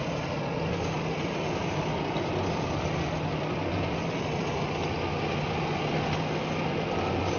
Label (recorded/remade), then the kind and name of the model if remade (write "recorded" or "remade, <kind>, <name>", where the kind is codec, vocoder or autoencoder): recorded